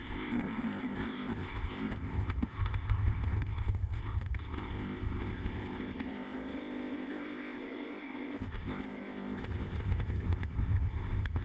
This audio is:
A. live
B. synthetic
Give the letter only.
B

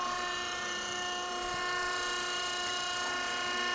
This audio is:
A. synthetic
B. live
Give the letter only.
A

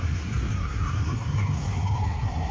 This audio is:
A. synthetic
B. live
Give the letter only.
A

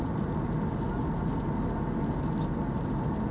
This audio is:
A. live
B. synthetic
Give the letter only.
A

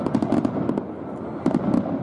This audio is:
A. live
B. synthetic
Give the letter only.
A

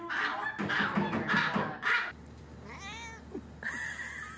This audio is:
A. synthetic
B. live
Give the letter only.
B